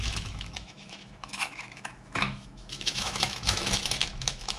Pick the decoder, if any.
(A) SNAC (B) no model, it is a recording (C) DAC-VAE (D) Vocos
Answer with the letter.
C